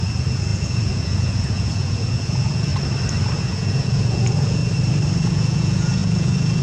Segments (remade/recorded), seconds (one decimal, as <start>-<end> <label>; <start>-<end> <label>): 0.0-2.7 remade; 2.7-3.4 recorded; 3.4-4.6 remade; 4.6-5.2 recorded; 5.2-6.6 remade